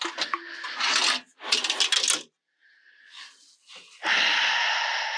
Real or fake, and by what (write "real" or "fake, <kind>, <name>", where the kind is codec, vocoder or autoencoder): real